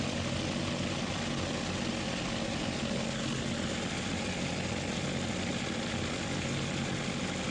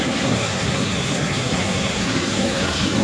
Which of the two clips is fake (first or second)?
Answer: second